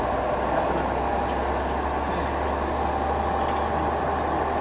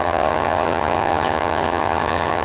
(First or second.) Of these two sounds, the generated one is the second